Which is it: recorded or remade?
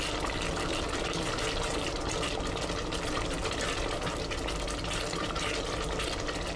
recorded